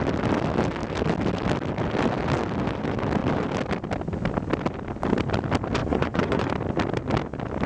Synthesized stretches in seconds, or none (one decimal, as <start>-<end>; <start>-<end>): 5.8-6.5